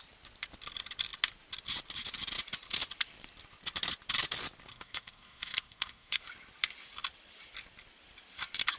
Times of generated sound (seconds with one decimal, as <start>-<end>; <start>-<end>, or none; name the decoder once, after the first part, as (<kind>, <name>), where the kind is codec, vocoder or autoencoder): 4.7-6.2 (codec, SNAC)